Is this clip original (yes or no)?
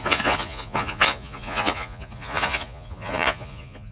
no